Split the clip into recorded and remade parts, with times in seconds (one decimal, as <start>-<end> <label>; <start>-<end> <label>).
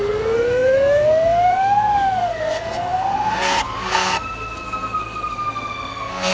0.0-6.3 remade